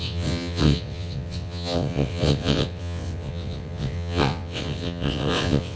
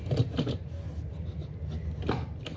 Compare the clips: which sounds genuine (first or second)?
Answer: second